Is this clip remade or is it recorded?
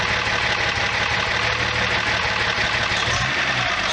recorded